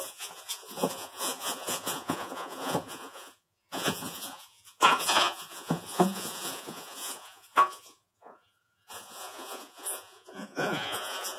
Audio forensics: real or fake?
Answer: fake